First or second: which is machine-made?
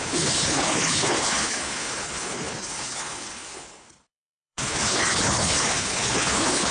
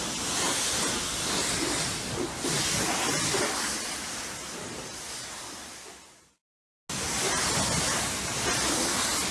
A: first